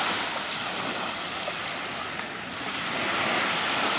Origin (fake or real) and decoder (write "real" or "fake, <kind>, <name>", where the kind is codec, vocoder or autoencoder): real